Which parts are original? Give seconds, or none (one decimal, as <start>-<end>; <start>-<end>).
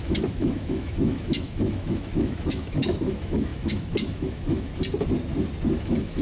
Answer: 4.7-5.8